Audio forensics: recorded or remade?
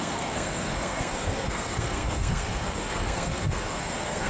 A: remade